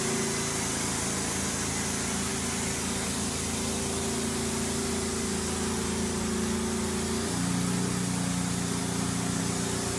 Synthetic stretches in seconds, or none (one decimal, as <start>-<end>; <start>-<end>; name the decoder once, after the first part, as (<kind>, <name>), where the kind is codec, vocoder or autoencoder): none